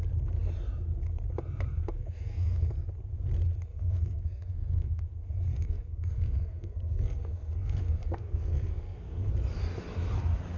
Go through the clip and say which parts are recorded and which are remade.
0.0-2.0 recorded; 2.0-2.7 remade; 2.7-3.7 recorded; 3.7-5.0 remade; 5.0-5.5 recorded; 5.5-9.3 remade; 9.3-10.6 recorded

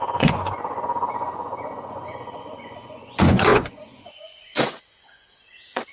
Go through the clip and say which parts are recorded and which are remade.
0.0-5.9 remade

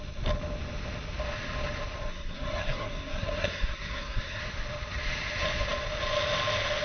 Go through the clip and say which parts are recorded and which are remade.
0.0-2.1 recorded; 2.1-4.4 remade; 4.4-6.8 recorded